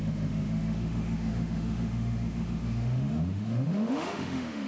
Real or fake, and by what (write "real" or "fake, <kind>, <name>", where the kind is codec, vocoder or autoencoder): fake, autoencoder, DAC-VAE